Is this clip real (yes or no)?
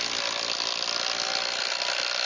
yes